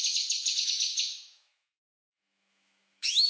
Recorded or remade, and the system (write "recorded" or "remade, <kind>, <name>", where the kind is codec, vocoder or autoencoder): remade, autoencoder, DAC-VAE